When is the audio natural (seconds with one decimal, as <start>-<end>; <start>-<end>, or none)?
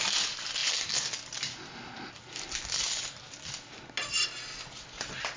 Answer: 0.0-5.4